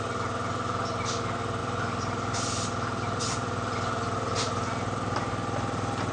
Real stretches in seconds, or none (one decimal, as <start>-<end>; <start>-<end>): 0.0-1.6; 5.3-6.1